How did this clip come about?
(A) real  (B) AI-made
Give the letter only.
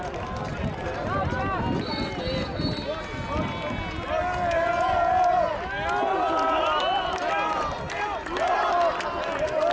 A